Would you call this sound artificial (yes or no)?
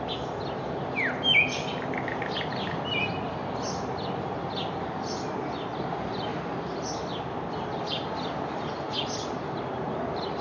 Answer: no